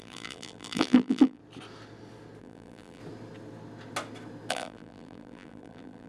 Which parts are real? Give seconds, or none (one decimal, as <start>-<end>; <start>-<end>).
1.4-2.4; 3.0-4.5

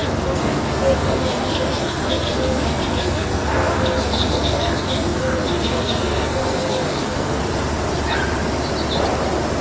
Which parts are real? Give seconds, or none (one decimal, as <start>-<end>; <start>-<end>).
7.4-9.6